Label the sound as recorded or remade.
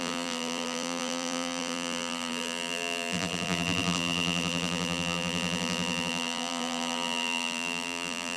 remade